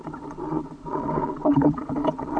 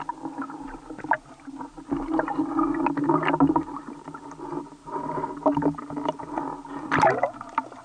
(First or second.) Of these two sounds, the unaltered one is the second